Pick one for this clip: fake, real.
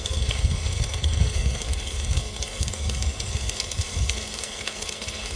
fake